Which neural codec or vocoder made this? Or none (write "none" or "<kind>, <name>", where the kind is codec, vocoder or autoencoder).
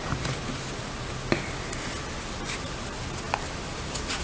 none